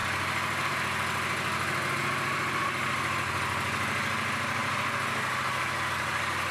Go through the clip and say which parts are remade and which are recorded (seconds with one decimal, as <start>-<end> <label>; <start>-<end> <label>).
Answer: 0.0-6.5 recorded